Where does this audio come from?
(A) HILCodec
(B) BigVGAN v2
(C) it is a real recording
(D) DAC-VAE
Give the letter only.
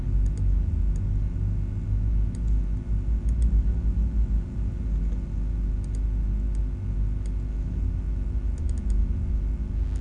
C